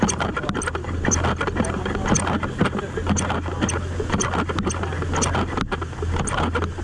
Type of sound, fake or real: real